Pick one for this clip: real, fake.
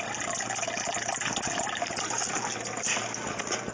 real